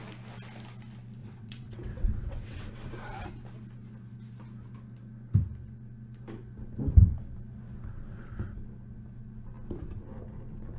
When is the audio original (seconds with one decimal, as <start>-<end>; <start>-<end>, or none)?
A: 0.0-1.2; 2.7-10.8